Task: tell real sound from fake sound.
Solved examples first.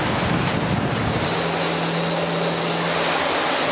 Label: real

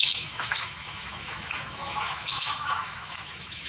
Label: fake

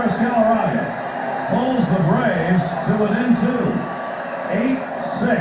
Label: real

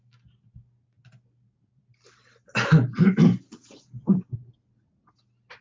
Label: real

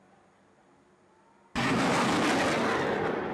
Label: real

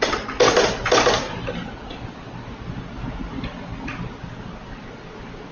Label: real